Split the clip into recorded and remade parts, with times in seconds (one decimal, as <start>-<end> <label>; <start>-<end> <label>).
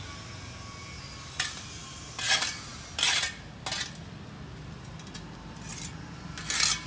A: 0.0-6.9 recorded